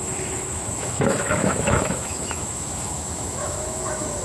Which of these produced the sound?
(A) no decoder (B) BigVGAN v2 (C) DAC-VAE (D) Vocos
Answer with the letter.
C